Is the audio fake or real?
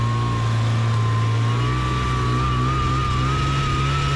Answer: real